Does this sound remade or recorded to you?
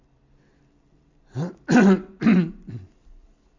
recorded